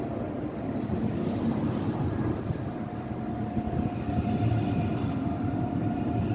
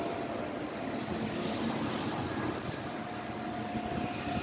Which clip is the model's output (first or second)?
first